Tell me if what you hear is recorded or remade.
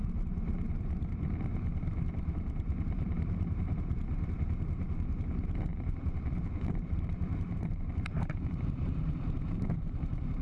remade